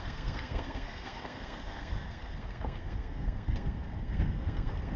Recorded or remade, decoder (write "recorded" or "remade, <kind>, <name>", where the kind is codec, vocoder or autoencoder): remade, codec, SNAC